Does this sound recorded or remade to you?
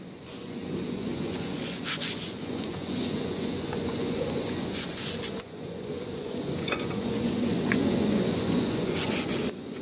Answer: remade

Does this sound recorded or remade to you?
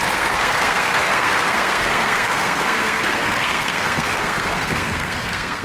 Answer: remade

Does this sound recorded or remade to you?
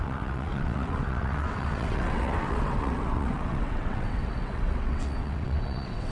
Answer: remade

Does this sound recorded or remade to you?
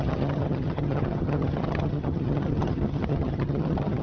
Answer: remade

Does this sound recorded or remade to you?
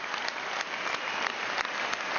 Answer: remade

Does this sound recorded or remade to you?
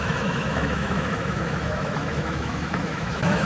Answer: remade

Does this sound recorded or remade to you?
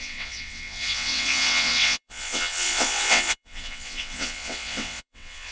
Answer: remade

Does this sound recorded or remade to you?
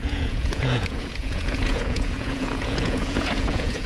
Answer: remade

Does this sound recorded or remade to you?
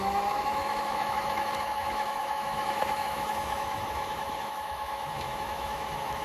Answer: remade